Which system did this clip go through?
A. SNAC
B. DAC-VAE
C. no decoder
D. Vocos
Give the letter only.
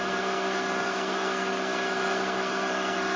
A